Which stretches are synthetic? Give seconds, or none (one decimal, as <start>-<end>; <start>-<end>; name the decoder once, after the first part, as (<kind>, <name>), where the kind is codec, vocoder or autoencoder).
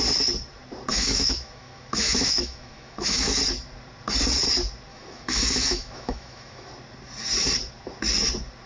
0.9-3.4 (autoencoder, DAC-VAE); 4.9-6.7